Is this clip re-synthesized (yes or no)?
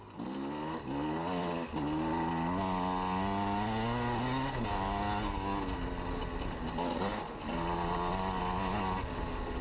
no